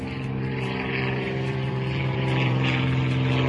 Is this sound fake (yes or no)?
yes